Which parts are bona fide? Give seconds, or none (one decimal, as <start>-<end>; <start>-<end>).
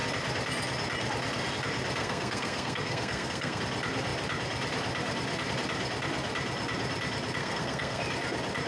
0.0-2.0; 3.6-7.4; 8.0-8.7